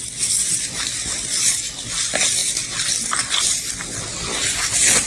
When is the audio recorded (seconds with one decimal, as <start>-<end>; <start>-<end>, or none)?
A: 0.0-5.1